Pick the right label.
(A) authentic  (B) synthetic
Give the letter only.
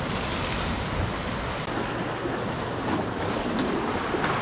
A